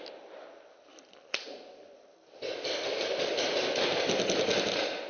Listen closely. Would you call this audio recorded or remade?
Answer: recorded